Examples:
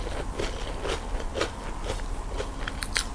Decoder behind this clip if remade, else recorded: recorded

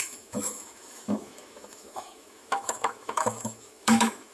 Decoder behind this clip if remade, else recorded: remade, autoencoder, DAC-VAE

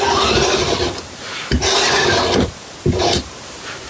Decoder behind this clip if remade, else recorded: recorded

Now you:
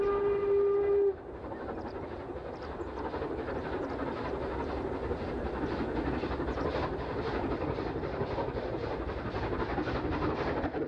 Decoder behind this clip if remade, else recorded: recorded